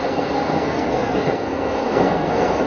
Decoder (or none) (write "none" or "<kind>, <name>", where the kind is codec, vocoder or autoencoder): codec, SNAC